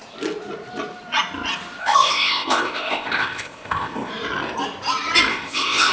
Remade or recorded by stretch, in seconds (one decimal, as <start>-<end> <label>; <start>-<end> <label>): 0.0-1.8 recorded; 1.8-4.1 remade; 4.1-5.3 recorded; 5.3-5.9 remade